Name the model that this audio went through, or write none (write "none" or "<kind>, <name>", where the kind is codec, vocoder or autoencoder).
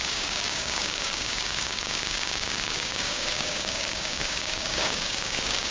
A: codec, DAC